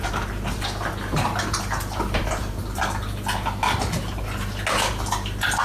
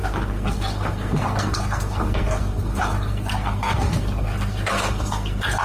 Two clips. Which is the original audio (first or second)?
first